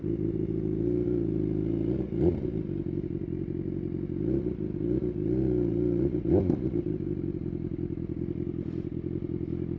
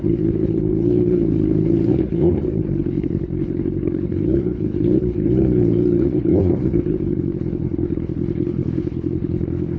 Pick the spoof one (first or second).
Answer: second